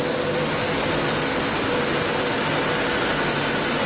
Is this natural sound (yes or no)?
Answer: yes